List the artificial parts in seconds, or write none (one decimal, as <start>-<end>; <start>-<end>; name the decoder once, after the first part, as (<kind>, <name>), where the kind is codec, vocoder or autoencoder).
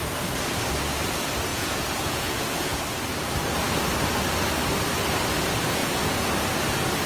1.5-2.8 (vocoder, Vocos); 5.8-6.3